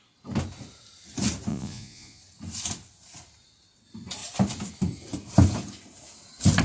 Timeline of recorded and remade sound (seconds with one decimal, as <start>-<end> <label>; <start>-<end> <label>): 0.0-1.5 recorded; 1.5-2.2 remade; 2.2-6.6 recorded